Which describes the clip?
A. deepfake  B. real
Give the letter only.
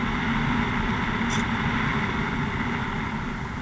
B